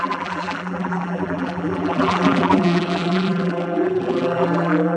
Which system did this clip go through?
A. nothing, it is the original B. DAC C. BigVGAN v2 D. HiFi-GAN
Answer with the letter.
C